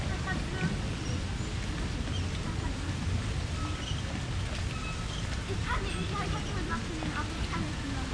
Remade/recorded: recorded